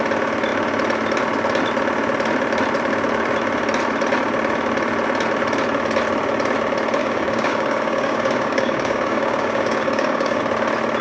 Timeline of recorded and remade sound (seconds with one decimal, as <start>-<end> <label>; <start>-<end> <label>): 0.0-7.0 recorded; 7.0-10.4 remade; 10.4-11.0 recorded